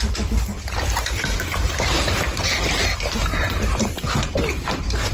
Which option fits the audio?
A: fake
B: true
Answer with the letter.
A